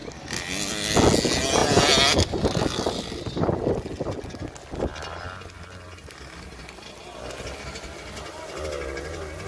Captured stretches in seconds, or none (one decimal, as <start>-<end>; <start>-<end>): 0.0-9.5